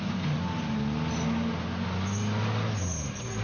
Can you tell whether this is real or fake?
real